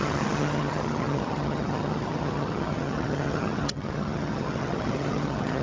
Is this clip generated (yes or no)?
yes